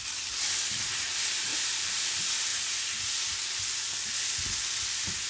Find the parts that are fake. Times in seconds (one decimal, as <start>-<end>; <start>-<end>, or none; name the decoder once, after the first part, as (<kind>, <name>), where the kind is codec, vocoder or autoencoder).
0.0-2.5 (vocoder, BigVGAN v2); 4.6-5.3